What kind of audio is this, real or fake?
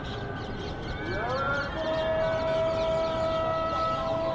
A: real